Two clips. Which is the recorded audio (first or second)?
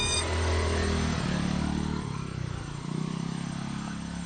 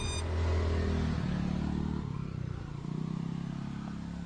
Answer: second